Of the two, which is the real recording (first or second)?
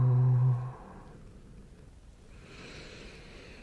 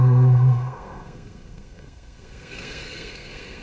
first